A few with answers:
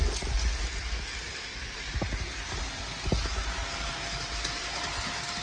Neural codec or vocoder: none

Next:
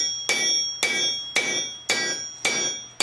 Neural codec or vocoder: none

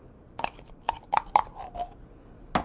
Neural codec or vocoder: none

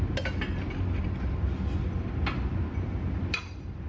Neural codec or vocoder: none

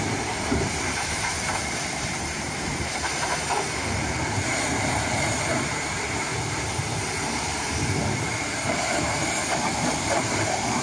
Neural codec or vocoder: vocoder, BigVGAN v2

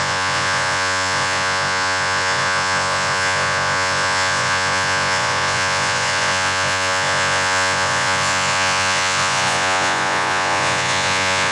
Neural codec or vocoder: vocoder, Vocos